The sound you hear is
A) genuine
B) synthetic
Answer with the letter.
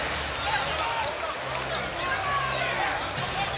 A